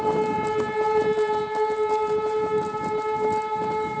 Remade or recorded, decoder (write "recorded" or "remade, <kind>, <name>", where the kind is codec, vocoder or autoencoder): recorded